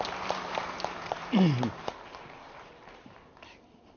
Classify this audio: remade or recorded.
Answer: remade